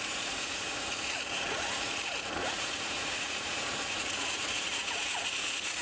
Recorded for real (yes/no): no